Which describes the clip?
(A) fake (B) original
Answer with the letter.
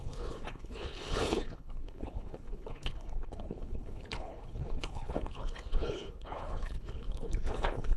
A